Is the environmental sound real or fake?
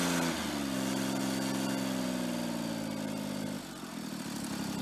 real